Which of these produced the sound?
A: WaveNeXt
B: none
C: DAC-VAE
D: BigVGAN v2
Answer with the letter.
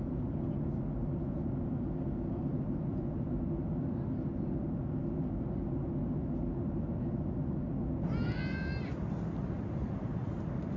B